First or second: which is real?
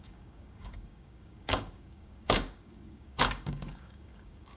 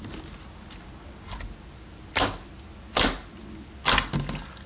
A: second